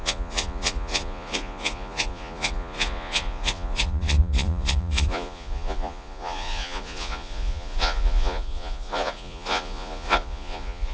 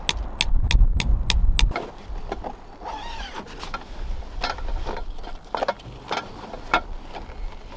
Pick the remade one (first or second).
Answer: first